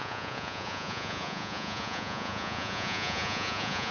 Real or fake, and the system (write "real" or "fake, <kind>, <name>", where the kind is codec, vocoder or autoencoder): fake, vocoder, Vocos